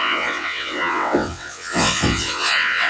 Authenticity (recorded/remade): remade